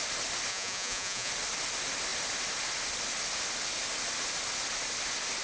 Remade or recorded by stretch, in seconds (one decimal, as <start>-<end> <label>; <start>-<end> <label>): 0.0-0.5 recorded; 0.5-1.3 remade; 1.3-5.4 recorded

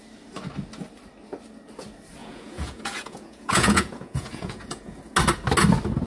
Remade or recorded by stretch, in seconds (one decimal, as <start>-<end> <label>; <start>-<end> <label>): 0.0-2.2 recorded; 2.2-4.9 remade; 4.9-6.1 recorded

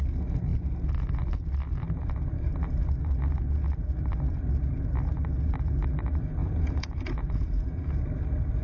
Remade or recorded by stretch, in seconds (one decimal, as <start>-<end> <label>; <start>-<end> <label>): 0.0-6.4 recorded; 6.4-8.0 remade; 8.0-8.6 recorded